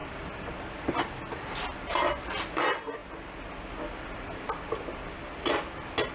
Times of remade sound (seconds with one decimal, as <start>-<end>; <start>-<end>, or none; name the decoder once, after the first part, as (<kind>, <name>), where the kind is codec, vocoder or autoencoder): none